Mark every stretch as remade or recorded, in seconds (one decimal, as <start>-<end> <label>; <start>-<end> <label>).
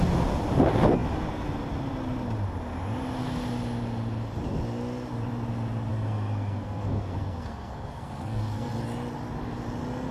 0.0-5.9 recorded; 5.9-8.7 remade; 8.7-10.1 recorded